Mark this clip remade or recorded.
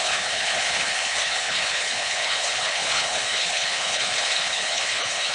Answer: remade